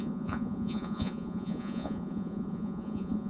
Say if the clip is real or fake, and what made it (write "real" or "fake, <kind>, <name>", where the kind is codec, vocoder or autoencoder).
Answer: fake, vocoder, Vocos